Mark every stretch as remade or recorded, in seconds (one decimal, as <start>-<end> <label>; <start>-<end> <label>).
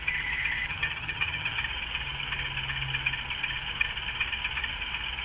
0.0-0.7 recorded; 0.7-1.6 remade; 1.6-5.2 recorded